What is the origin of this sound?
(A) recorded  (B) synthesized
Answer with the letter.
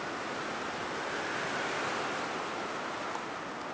A